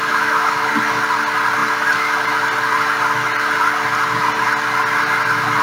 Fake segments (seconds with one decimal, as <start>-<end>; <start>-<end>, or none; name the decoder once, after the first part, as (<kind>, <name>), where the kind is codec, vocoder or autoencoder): 0.0-0.7 (autoencoder, DAC-VAE)